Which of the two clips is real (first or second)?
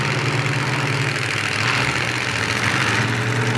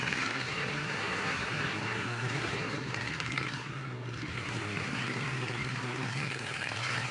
first